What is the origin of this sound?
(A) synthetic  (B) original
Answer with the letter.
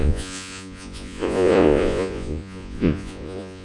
A